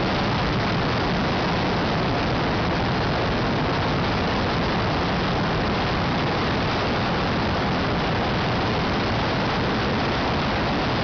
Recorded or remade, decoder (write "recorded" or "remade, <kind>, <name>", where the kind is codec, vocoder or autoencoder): recorded